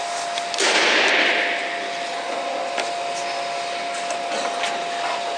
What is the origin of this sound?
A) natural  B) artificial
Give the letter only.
A